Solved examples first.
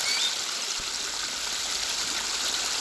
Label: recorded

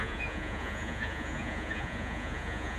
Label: remade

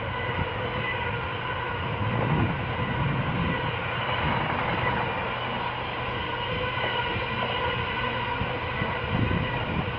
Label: recorded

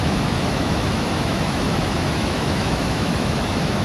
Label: remade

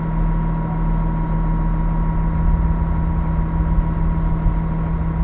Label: recorded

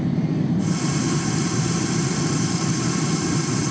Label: remade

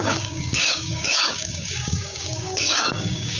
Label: remade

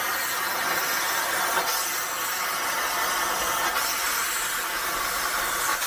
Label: recorded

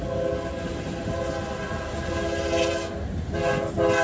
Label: recorded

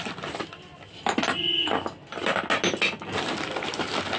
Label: recorded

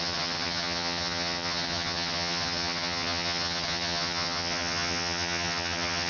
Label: remade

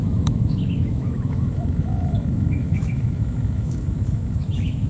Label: remade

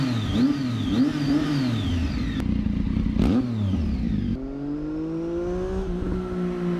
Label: recorded